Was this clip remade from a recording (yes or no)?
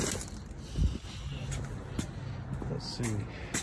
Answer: no